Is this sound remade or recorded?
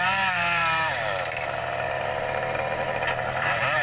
remade